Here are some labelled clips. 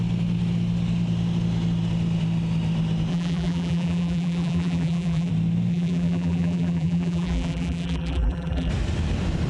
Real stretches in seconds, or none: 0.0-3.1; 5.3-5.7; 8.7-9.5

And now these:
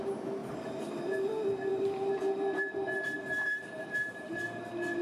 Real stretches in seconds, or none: 0.0-0.4; 0.9-1.7; 4.4-5.0